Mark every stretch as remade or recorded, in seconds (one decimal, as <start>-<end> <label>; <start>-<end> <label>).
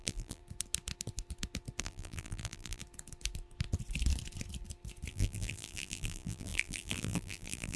0.0-0.4 remade; 0.4-1.8 recorded; 1.8-2.8 remade; 2.8-5.1 recorded; 5.1-7.8 remade